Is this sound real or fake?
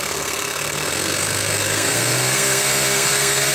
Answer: fake